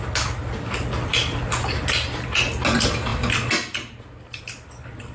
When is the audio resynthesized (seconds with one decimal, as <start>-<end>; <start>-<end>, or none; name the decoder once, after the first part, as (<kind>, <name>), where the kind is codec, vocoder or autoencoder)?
none